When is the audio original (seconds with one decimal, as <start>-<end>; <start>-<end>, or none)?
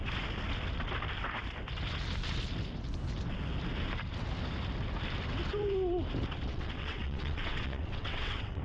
0.0-6.5